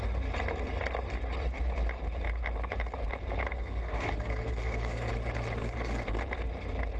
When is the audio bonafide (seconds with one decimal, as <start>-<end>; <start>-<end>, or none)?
0.0-3.5; 5.1-5.6; 6.2-7.0